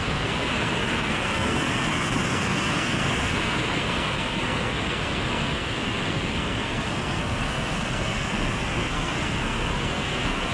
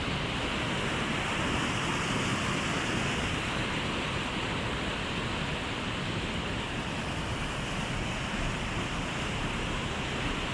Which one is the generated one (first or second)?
first